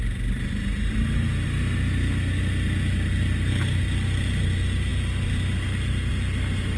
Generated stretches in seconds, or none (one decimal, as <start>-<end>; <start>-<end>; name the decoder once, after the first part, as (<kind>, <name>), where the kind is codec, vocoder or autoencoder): none